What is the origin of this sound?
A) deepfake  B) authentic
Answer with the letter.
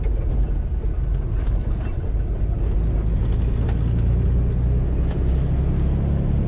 B